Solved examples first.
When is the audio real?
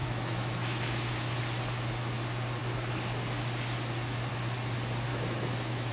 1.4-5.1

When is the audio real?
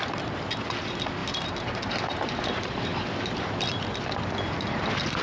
0.0-5.2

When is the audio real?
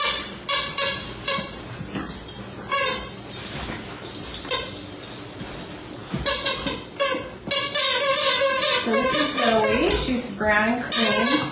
0.0-3.4; 4.1-11.5